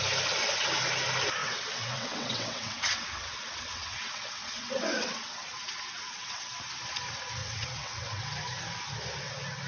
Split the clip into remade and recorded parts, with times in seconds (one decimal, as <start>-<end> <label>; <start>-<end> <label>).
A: 0.0-1.4 recorded; 1.4-6.6 remade; 6.6-7.4 recorded; 7.4-8.3 remade; 8.3-9.7 recorded